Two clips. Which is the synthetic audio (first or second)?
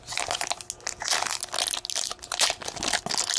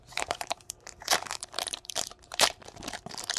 second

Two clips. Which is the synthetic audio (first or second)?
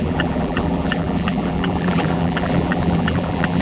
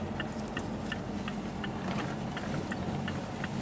first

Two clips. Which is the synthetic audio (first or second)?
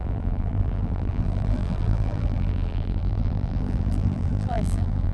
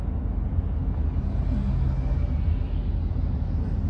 first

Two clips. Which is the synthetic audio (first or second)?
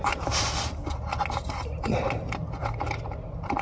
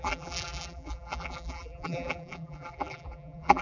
second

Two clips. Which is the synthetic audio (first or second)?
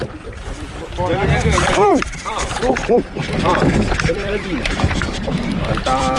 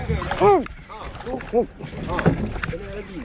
first